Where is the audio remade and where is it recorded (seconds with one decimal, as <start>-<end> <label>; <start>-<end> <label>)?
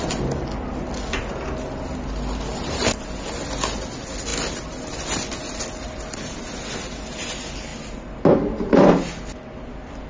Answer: 0.0-10.1 recorded